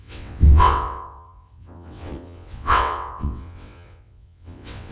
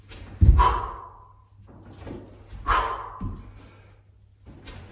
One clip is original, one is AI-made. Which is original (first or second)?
second